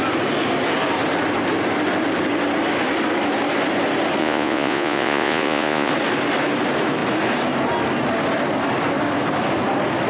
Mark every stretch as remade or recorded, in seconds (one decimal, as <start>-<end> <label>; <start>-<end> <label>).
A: 0.0-4.2 recorded; 4.2-5.9 remade; 5.9-10.1 recorded